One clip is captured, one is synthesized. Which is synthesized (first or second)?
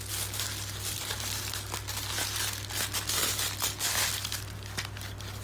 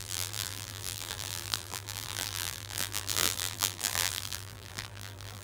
second